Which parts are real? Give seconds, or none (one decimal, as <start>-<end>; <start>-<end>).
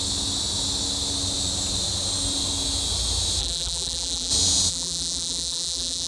0.0-3.4; 4.3-4.7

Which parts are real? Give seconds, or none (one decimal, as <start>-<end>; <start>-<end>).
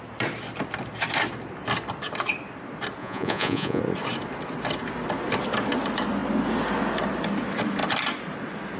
0.0-3.0; 3.8-8.8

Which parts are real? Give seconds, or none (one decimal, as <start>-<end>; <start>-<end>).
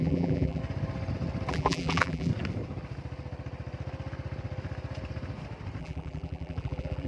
0.6-1.5; 2.3-5.8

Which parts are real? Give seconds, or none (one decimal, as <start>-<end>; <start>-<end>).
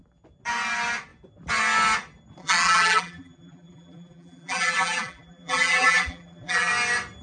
0.0-2.4; 6.7-7.2